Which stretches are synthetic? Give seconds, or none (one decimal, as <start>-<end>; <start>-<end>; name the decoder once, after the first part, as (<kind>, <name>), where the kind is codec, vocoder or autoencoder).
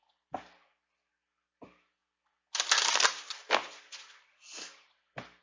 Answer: none